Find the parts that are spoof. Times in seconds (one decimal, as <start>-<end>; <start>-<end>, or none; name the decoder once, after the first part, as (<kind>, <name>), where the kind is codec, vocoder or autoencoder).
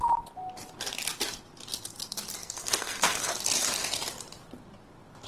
2.4-3.3 (codec, SNAC)